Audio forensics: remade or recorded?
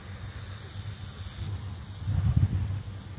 recorded